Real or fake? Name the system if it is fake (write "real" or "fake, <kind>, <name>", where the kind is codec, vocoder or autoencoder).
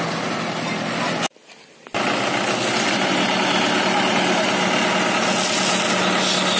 real